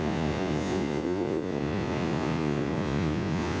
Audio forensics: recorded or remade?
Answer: remade